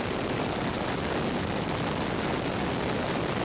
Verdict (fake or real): real